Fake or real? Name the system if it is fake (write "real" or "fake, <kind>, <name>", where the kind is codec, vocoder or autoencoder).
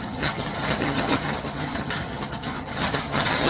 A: fake, vocoder, HiFi-GAN